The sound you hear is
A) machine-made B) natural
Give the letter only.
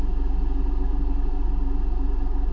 B